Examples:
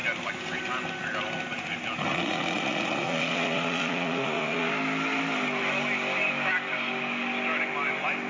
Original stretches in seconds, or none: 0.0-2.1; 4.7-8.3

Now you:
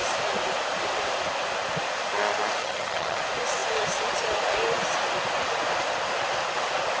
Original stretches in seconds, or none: 0.0-2.6; 3.2-7.0

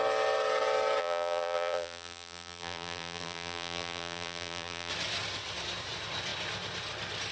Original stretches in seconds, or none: 0.0-1.0; 4.9-7.3

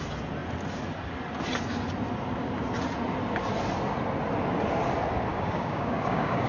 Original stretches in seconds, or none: 0.0-5.3